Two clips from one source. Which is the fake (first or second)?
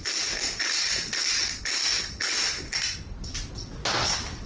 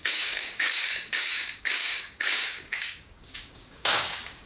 second